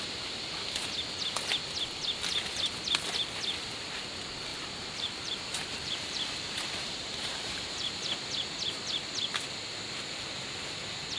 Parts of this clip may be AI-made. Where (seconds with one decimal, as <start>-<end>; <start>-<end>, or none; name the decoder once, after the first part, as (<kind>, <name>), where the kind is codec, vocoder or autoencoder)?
4.5-8.0 (vocoder, BigVGAN v2)